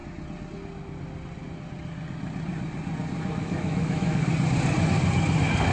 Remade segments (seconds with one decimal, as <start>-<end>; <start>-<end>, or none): 3.4-4.3